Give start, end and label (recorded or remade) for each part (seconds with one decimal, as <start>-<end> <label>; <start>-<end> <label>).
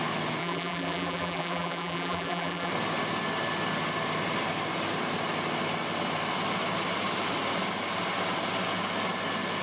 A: 0.0-0.4 recorded; 0.4-2.7 remade; 2.7-9.6 recorded